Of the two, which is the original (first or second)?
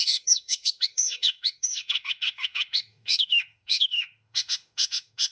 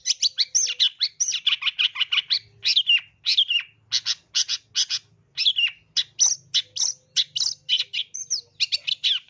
second